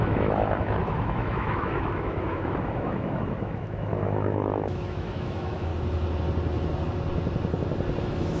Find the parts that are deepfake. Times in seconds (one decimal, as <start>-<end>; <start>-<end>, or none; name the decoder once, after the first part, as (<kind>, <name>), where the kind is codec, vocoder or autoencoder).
0.0-5.7 (autoencoder, DAC-VAE); 8.0-8.4